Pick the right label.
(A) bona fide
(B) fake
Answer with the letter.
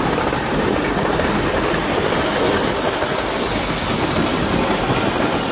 A